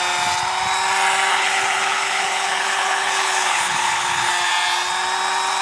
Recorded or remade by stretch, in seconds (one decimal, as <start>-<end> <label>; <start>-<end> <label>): 0.0-1.3 recorded; 1.3-4.3 remade; 4.3-5.6 recorded